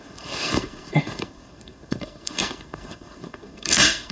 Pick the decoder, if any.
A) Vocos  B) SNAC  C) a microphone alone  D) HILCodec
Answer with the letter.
B